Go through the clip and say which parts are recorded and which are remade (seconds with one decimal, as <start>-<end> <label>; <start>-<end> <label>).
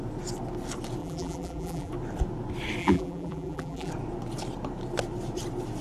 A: 0.0-1.0 recorded; 1.0-1.9 remade; 1.9-2.8 recorded; 2.8-3.9 remade; 3.9-5.8 recorded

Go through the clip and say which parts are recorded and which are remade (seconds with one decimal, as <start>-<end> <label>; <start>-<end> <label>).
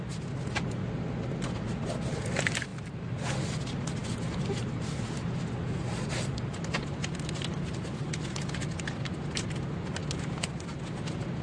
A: 0.0-2.7 recorded; 2.7-3.3 remade; 3.3-11.4 recorded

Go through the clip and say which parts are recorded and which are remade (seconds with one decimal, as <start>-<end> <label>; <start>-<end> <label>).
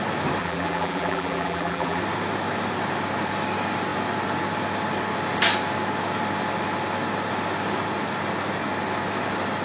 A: 0.0-0.4 recorded; 0.4-2.0 remade; 2.0-9.6 recorded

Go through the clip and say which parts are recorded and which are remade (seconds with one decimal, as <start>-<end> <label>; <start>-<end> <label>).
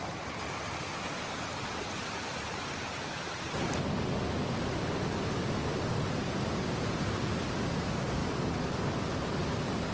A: 0.0-9.9 recorded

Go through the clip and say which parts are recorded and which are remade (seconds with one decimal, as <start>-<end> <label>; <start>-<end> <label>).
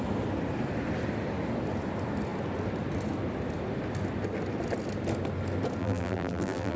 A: 0.0-5.8 recorded; 5.8-6.8 remade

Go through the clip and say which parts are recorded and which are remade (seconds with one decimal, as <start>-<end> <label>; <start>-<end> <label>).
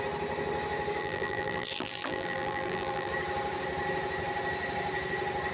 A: 0.0-1.0 recorded; 1.0-3.1 remade; 3.1-5.5 recorded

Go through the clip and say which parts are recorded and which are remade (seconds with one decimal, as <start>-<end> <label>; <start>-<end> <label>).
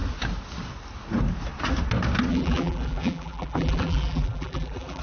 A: 0.0-2.3 recorded; 2.3-5.0 remade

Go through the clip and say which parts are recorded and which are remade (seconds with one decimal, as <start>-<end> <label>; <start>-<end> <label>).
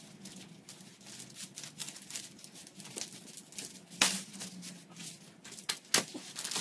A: 0.0-6.6 recorded